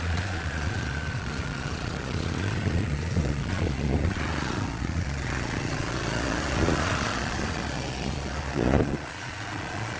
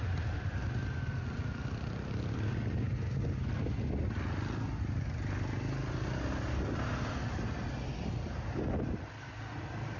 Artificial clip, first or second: first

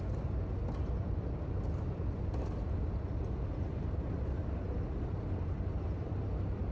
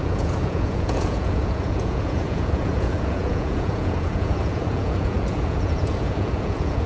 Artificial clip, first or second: second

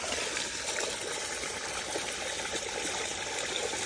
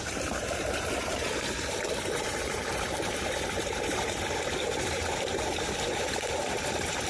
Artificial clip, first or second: second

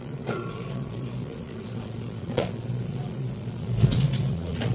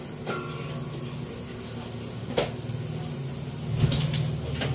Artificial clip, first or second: first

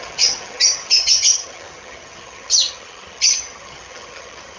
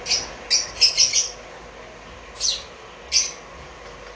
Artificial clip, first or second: first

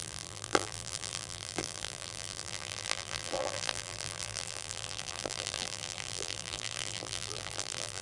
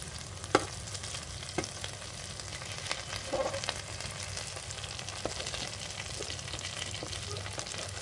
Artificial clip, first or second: first